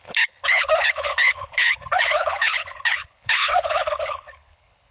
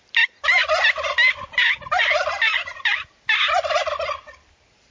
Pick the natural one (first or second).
second